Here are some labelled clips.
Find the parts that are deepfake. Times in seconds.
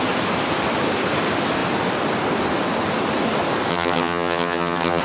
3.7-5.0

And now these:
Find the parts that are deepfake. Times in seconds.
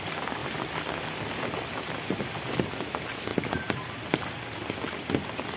3.3-3.9